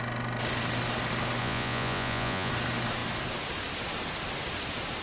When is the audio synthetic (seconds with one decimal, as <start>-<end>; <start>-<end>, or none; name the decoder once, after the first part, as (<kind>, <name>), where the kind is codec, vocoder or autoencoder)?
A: 1.4-2.5 (vocoder, Vocos)